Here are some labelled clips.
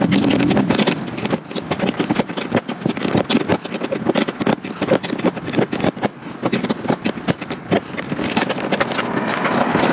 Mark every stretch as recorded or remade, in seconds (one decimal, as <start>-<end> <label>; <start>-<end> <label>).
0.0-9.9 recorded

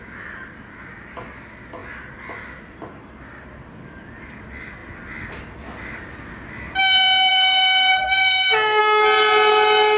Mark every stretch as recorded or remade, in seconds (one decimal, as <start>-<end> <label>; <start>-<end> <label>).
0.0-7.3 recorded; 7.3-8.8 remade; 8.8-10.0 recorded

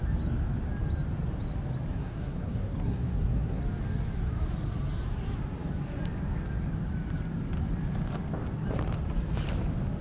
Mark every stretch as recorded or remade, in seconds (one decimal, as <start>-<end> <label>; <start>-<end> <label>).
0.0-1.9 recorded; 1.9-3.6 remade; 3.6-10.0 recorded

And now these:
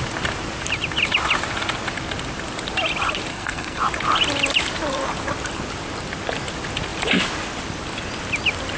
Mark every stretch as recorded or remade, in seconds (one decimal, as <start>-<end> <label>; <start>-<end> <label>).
0.0-3.3 recorded; 3.3-3.8 remade; 3.8-8.8 recorded

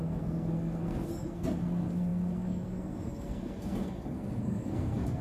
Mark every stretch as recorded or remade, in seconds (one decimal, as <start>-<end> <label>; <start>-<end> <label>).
0.0-5.2 remade